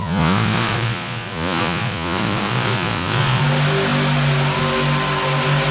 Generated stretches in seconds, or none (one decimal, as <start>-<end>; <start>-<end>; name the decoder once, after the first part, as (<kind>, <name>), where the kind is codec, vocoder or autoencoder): 0.0-3.4 (vocoder, Vocos)

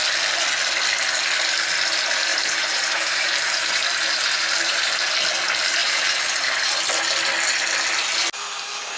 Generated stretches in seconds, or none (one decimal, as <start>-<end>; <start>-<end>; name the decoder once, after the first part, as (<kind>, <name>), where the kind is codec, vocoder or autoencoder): 2.3-4.9 (vocoder, BigVGAN v2); 5.8-6.8

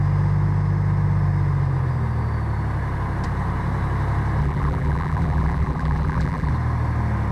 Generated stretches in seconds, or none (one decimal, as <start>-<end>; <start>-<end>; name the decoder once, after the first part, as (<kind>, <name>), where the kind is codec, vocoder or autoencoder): 4.4-6.5 (vocoder, BigVGAN v2)

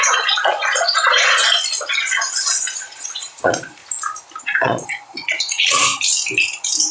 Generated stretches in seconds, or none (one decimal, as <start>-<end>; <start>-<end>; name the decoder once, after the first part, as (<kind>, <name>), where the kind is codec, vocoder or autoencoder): 0.0-1.4 (vocoder, Vocos); 2.1-3.8; 4.4-5.9

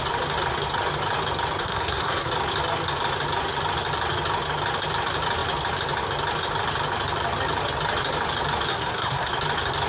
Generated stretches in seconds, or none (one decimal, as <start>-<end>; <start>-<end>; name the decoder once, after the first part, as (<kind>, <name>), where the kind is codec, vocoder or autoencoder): 1.6-2.3 (codec, SNAC); 8.7-9.3